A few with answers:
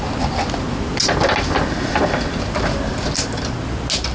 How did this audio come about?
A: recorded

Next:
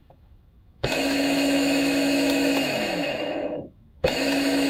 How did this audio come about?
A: remade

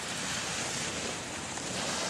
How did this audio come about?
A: recorded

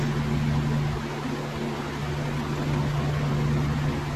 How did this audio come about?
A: recorded